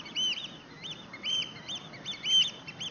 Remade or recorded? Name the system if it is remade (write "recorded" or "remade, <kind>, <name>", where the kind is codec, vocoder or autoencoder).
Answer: recorded